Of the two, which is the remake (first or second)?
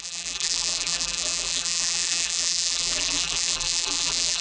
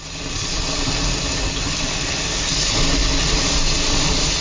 first